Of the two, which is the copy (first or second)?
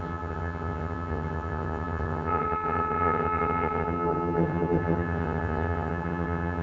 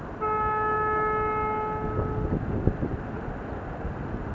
first